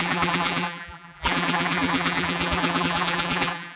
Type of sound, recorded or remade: remade